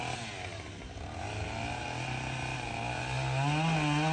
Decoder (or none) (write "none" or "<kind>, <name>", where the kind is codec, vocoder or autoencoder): none